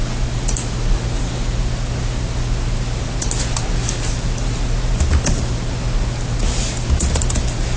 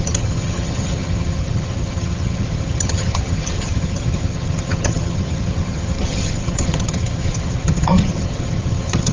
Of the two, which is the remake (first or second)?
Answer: second